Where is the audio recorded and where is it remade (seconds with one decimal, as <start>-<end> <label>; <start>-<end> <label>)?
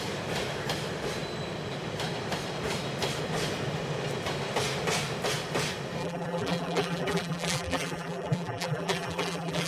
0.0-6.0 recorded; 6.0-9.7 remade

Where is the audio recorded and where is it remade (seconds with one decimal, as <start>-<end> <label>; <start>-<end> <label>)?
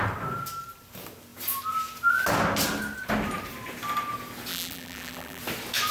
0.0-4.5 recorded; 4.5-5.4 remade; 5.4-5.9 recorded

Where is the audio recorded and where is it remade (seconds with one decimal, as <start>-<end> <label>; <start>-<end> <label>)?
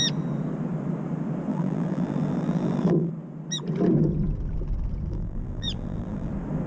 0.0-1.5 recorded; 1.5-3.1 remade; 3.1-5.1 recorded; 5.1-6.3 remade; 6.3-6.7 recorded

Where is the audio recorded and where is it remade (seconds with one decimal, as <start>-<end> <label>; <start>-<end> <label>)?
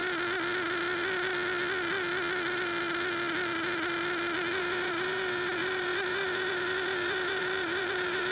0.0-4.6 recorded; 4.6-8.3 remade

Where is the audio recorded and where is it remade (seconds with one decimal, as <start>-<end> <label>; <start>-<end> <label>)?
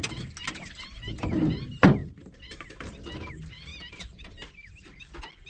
0.0-3.7 recorded; 3.7-4.3 remade; 4.3-5.5 recorded